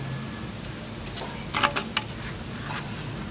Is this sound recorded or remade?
recorded